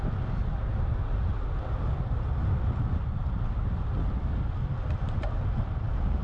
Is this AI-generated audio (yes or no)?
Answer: no